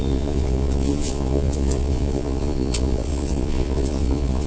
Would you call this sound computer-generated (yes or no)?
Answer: yes